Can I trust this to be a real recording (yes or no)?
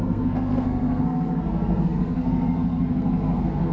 no